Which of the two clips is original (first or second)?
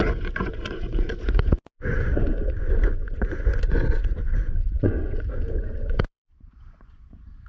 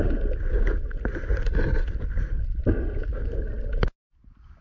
second